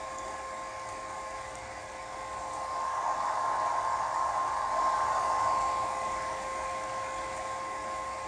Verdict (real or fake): fake